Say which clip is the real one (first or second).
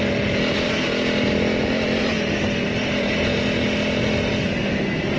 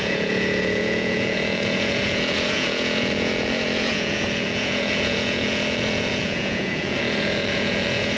first